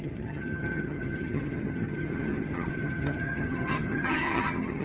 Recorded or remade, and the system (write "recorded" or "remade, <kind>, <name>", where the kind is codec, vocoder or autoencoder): remade, vocoder, HiFi-GAN